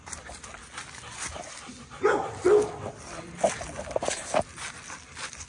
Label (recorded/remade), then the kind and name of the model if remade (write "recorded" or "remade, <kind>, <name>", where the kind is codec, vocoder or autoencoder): recorded